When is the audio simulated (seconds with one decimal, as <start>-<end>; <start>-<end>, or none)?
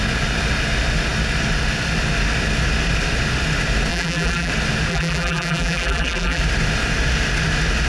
3.9-4.5; 4.9-6.4